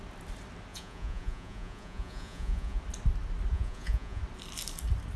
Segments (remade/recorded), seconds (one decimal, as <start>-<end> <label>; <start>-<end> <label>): 0.0-0.7 recorded; 0.7-2.8 remade; 2.8-3.5 recorded; 3.5-4.2 remade; 4.2-5.2 recorded